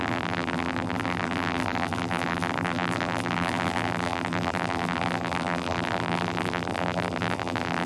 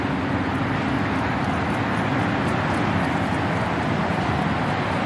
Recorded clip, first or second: second